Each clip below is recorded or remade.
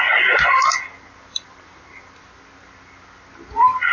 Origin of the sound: recorded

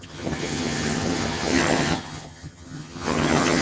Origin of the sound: remade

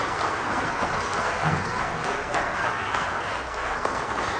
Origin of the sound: remade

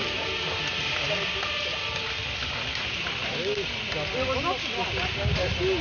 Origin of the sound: recorded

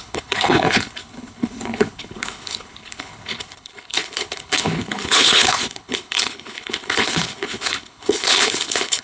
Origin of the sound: remade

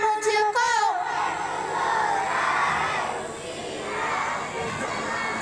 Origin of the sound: recorded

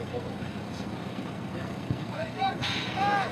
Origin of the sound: remade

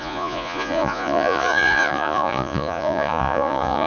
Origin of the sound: remade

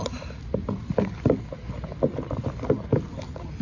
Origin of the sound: recorded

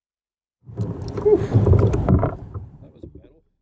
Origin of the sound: remade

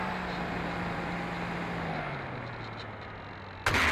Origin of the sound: recorded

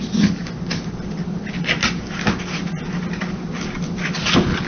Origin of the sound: recorded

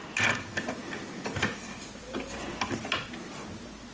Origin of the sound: recorded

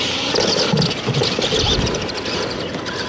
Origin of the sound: recorded